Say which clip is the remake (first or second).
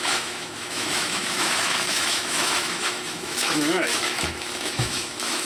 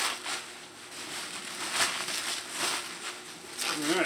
first